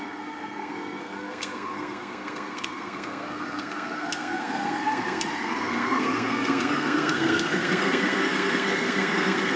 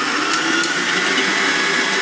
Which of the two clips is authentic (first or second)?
second